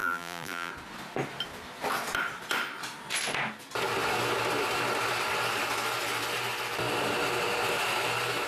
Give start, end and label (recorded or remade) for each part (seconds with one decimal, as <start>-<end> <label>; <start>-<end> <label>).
0.0-0.7 remade; 0.7-8.5 recorded